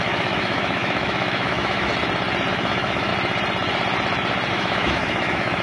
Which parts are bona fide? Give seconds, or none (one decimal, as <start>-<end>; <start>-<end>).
1.9-2.5; 3.1-4.5